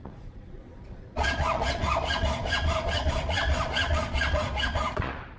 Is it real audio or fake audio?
fake